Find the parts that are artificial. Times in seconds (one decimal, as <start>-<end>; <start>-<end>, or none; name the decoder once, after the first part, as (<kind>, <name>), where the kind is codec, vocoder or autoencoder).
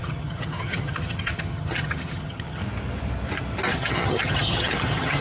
0.0-2.6 (vocoder, HiFi-GAN); 3.7-5.2